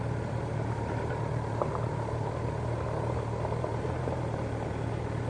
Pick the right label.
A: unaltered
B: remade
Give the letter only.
A